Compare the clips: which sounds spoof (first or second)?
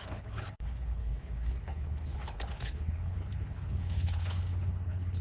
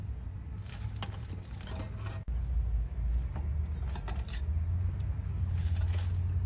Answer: first